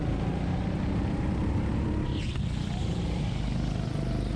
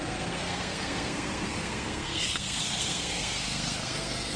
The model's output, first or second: second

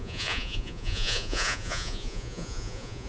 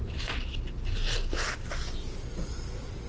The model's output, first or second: first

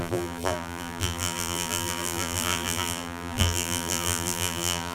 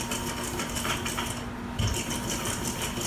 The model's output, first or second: first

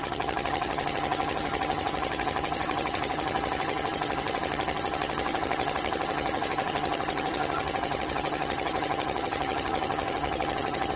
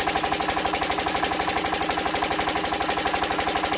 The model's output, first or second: first